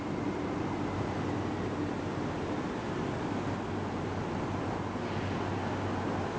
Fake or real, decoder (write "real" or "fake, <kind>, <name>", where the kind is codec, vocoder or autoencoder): real